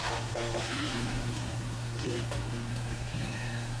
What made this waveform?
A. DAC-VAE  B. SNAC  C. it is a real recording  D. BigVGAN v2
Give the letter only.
B